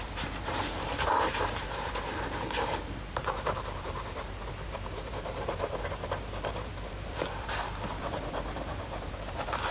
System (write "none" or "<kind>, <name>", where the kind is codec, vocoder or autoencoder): vocoder, BigVGAN v2